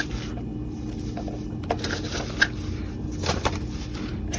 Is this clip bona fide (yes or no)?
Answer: yes